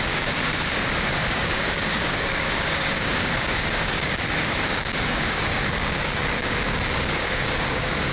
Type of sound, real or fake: fake